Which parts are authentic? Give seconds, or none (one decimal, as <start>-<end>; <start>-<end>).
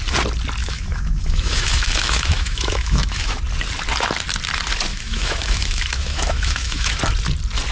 0.0-0.6; 3.4-4.9; 7.0-7.7